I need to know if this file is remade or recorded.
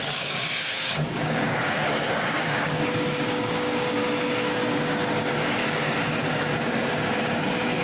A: remade